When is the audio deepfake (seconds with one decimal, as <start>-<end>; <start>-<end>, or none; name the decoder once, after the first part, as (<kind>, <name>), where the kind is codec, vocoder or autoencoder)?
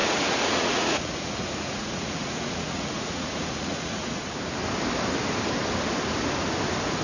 0.0-4.2 (vocoder, Vocos)